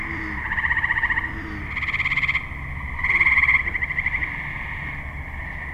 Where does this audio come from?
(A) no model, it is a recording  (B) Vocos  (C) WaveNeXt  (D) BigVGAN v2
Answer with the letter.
A